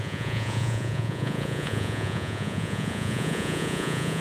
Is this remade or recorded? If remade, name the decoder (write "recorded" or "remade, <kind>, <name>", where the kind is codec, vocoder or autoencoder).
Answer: remade, vocoder, Vocos